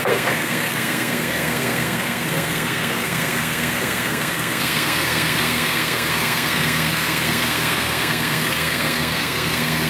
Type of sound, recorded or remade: remade